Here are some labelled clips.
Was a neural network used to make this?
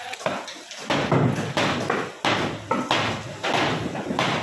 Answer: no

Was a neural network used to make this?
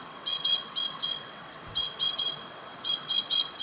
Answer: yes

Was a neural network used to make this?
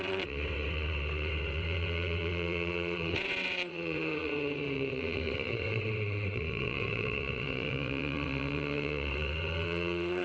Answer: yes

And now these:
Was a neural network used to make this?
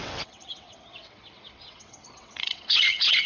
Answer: yes